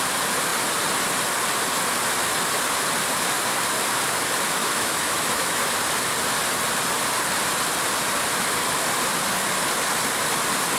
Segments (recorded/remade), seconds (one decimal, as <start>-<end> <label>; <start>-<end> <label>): 0.0-4.6 recorded; 4.6-5.8 remade; 5.8-10.8 recorded